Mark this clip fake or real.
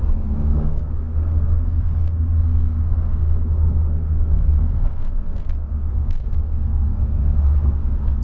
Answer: fake